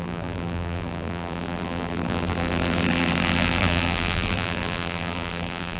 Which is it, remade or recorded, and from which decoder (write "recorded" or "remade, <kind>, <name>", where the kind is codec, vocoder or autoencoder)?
remade, vocoder, BigVGAN v2